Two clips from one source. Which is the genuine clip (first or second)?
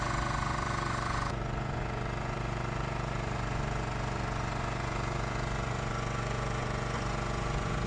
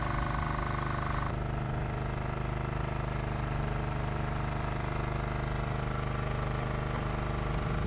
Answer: second